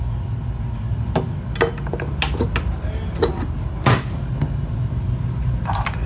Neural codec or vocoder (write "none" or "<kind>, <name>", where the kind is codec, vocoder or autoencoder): none